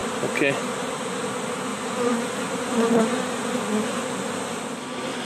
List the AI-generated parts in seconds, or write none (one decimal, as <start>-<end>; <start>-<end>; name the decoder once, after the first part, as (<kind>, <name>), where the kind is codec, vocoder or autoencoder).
0.0-1.1 (vocoder, BigVGAN v2); 1.7-2.3